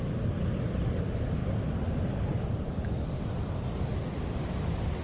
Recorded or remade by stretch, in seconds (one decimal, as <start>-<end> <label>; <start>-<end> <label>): 0.0-1.4 recorded; 1.4-3.8 remade; 3.8-5.0 recorded